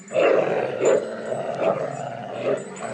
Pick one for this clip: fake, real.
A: real